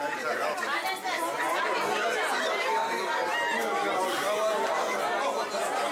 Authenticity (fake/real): real